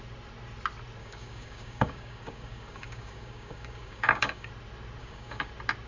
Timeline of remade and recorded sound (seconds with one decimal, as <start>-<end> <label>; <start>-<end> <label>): 0.0-1.0 recorded; 1.0-4.5 remade; 4.5-5.0 recorded; 5.0-5.5 remade; 5.5-5.9 recorded